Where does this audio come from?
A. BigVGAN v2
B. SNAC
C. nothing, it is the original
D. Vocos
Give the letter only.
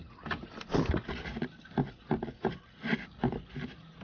C